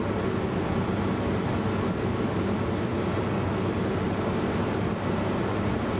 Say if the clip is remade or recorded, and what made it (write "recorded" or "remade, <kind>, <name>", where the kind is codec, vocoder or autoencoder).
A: recorded